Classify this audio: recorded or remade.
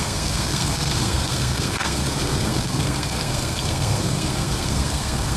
remade